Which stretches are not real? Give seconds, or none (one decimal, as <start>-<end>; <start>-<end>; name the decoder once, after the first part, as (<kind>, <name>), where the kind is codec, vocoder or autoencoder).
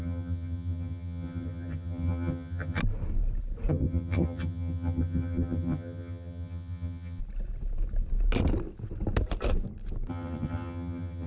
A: 0.0-2.8 (vocoder, HiFi-GAN); 3.7-7.2; 10.1-11.3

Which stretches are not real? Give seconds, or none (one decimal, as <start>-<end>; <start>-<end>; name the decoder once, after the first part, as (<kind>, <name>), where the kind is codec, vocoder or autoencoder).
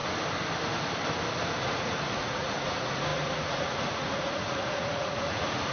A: 1.6-5.7 (vocoder, Vocos)